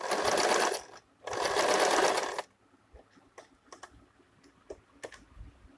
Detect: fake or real real